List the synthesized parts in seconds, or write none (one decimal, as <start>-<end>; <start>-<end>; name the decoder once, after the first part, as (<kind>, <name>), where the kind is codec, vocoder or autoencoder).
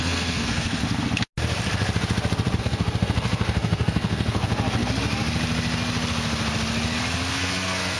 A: 0.0-0.8 (codec, SNAC); 2.6-4.5; 7.3-8.0